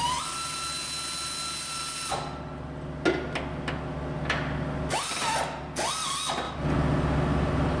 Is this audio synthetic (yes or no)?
no